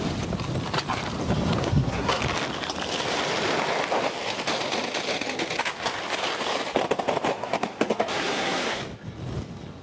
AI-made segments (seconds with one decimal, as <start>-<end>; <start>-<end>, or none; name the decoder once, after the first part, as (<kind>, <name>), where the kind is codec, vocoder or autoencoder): 1.6-2.2 (codec, SNAC); 7.3-8.8